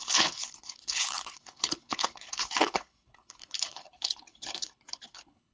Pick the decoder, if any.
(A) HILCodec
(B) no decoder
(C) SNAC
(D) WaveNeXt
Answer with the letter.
A